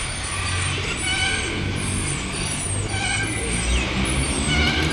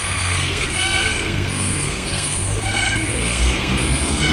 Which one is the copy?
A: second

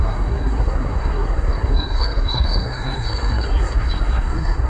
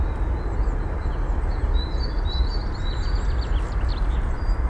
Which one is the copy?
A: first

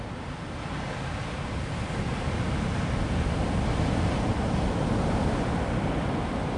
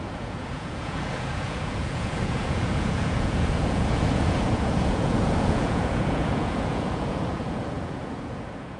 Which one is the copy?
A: second